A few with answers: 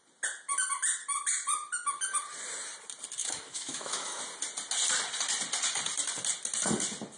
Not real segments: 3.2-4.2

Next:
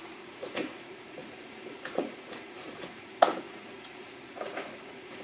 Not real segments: 0.0-5.2

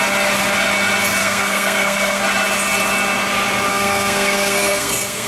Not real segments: 1.2-2.2; 3.7-5.3

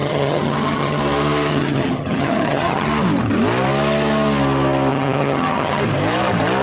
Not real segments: 0.0-1.0; 1.5-2.9; 4.9-5.8

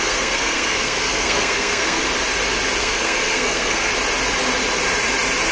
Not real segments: 0.0-2.0; 2.8-3.9

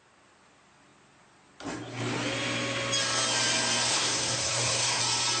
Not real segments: 3.9-5.0